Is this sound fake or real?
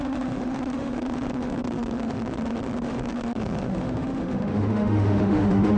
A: fake